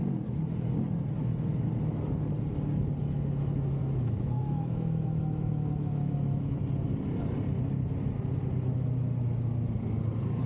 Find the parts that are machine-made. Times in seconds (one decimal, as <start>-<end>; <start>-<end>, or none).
3.8-6.6